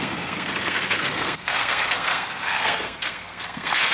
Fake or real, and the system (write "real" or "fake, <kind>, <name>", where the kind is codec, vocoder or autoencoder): fake, codec, SNAC